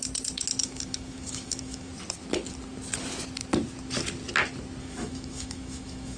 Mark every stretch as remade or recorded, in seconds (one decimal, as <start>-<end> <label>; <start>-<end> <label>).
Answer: 0.0-0.6 recorded; 0.6-1.9 remade; 1.9-4.8 recorded; 4.8-6.2 remade